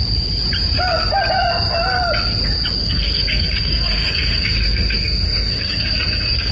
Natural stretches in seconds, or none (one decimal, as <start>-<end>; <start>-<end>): 0.0-2.8